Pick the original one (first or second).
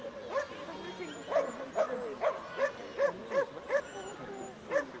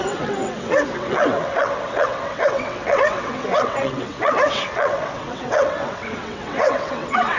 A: first